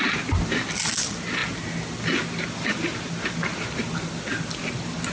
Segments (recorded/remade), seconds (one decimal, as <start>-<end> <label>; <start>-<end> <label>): 0.0-5.1 recorded